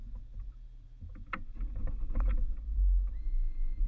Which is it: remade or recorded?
recorded